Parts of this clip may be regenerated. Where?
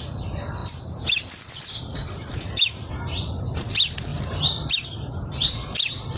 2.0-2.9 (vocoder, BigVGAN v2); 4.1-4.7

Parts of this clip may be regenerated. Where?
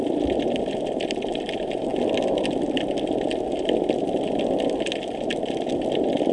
none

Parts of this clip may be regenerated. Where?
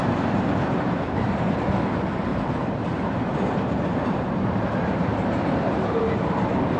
0.0-1.7 (vocoder, BigVGAN v2); 2.3-6.0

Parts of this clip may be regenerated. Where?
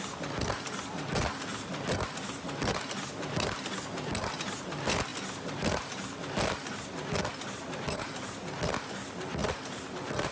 1.5-2.5 (vocoder, BigVGAN v2); 9.4-10.3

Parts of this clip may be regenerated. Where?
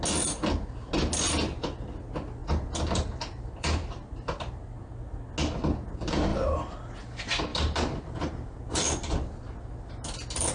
2.4-4.9 (vocoder, BigVGAN v2); 7.5-8.1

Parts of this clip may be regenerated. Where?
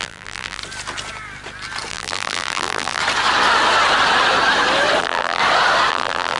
0.0-0.6 (vocoder, BigVGAN v2); 1.9-3.0; 5.0-5.4; 5.9-6.4